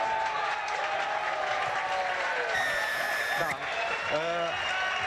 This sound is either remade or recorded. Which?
recorded